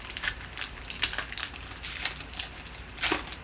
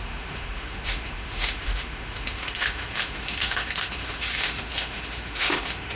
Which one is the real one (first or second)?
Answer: first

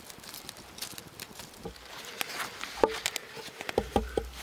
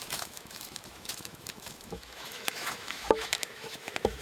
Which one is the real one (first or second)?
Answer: first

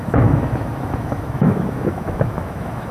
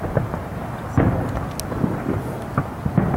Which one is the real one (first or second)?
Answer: second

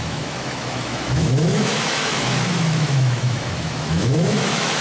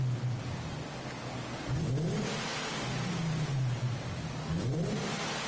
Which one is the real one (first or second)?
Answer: second